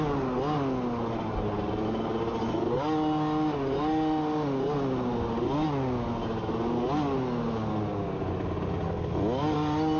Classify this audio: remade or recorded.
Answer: recorded